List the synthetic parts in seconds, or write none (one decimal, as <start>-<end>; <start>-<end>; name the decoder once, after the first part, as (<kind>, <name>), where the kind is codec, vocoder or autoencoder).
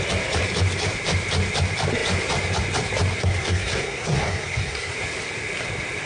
3.2-4.9 (codec, SNAC)